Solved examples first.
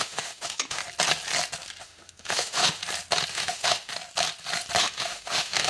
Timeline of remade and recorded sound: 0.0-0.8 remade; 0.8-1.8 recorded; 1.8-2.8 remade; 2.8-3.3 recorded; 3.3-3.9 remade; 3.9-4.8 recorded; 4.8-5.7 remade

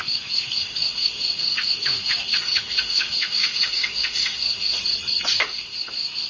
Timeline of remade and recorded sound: 0.0-4.8 remade; 4.8-5.4 recorded; 5.4-6.3 remade

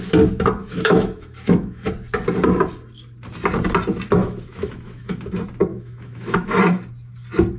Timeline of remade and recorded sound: 0.0-0.6 recorded; 0.6-1.9 remade; 1.9-4.2 recorded; 4.2-5.2 remade; 5.2-5.7 recorded; 5.7-6.6 remade; 6.6-7.6 recorded

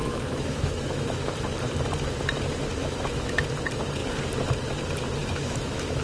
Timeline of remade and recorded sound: 0.0-1.2 remade; 1.2-2.8 recorded; 2.8-3.4 remade; 3.4-5.2 recorded; 5.2-6.0 remade

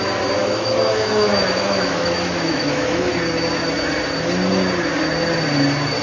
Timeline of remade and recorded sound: 0.0-0.4 recorded; 0.4-3.1 remade; 3.1-6.0 recorded

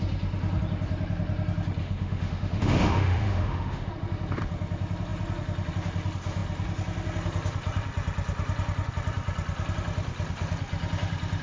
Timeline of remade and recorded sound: 0.0-1.8 recorded; 1.8-3.9 remade; 3.9-11.4 recorded

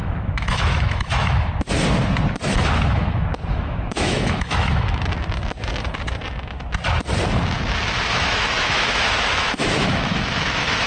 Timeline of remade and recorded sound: 0.0-1.5 remade; 1.5-3.5 recorded; 3.5-5.0 remade; 5.0-8.1 recorded; 8.1-10.9 remade